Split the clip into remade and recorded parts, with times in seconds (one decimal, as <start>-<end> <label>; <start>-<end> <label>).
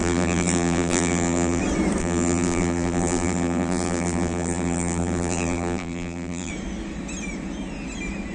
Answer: 0.0-1.6 remade; 1.6-2.0 recorded; 2.0-6.5 remade; 6.5-8.3 recorded